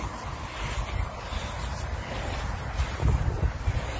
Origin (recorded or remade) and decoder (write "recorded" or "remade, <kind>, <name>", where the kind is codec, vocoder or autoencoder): recorded